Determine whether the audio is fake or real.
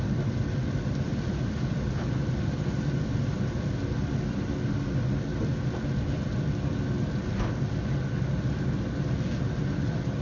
real